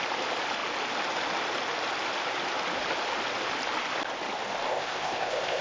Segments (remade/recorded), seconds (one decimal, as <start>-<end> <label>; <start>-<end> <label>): 0.0-4.7 recorded; 4.7-5.6 remade

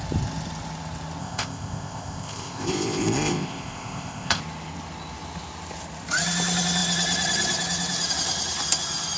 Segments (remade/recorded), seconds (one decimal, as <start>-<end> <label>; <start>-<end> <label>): 0.0-1.2 recorded; 1.2-4.4 remade; 4.4-9.2 recorded